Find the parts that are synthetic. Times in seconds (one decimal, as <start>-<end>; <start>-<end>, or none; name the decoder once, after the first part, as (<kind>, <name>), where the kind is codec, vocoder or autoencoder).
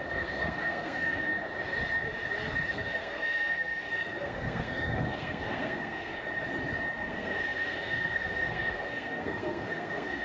0.0-1.3 (codec, SNAC); 2.7-6.1; 7.1-10.2